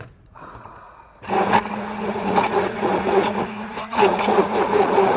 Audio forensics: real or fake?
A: fake